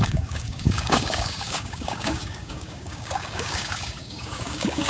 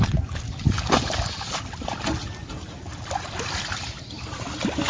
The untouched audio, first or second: second